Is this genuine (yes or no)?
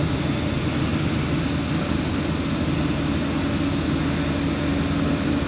yes